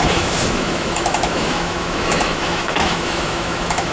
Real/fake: fake